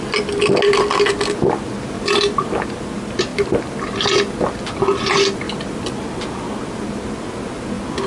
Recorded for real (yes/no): yes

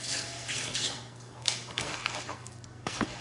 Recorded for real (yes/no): no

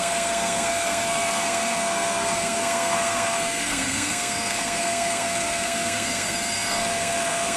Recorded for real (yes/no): no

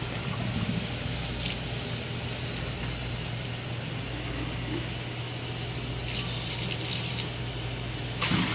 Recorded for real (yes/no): yes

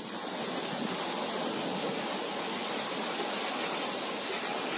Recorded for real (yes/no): yes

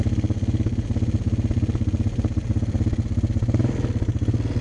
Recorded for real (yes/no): yes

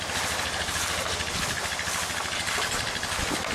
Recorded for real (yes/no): yes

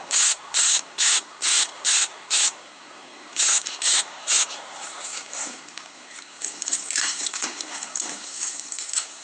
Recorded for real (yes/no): no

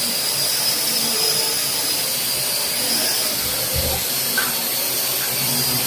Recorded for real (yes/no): yes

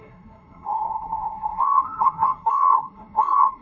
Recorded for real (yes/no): no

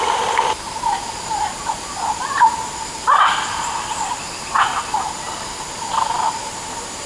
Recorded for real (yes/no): yes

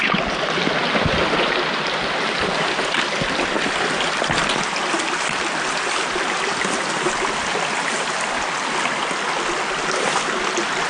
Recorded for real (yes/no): yes